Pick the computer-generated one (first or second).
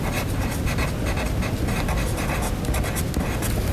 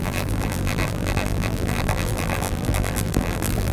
second